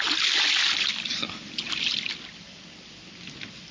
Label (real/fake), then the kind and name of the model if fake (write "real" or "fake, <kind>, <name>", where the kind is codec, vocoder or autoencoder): real